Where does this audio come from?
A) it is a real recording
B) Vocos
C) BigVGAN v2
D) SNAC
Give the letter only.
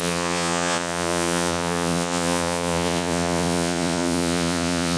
B